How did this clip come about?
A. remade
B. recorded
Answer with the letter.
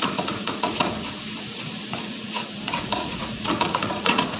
A